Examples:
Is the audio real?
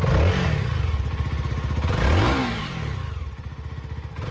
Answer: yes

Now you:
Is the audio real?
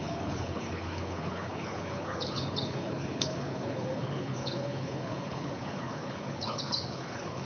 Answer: no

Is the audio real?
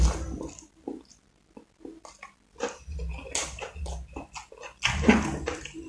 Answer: yes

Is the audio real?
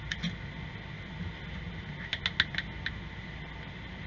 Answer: yes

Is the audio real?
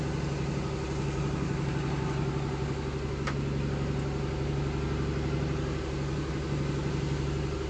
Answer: yes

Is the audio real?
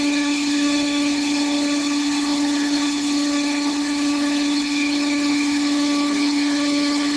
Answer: no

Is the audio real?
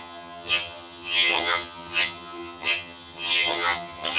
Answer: no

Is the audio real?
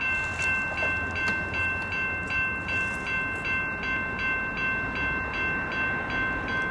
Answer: yes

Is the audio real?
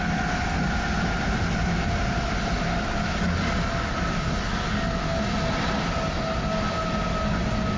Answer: yes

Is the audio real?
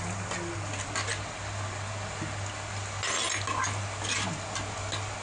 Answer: yes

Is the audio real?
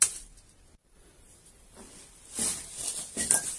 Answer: yes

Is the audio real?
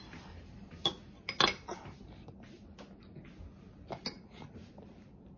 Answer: yes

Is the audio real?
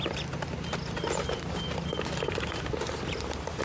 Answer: no